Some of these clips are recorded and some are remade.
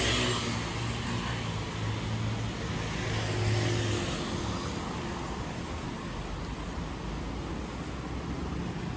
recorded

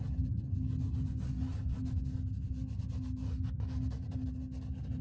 recorded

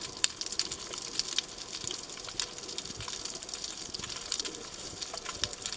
recorded